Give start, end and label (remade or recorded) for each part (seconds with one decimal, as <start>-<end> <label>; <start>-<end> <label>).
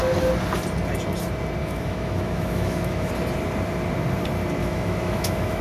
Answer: 0.0-1.6 recorded; 1.6-3.1 remade; 3.1-4.6 recorded; 4.6-5.6 remade